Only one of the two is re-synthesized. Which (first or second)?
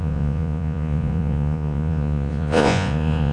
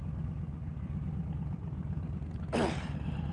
first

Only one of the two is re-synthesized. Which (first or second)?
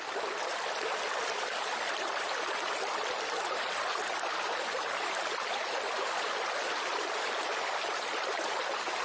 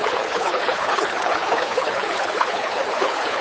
second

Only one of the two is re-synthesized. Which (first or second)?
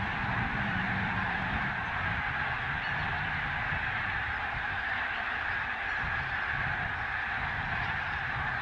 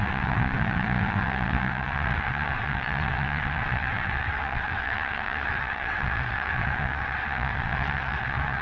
second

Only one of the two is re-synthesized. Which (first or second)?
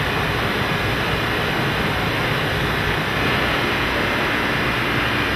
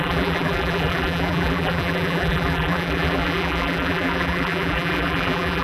second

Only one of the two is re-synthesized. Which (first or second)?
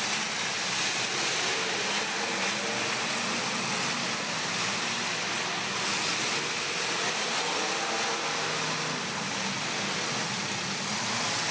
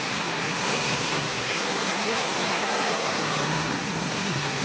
second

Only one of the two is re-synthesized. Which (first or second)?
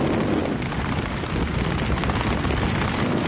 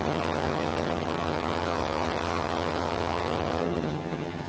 second